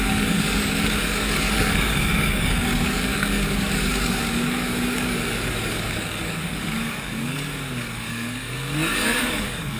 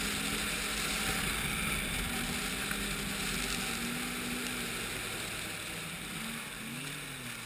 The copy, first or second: first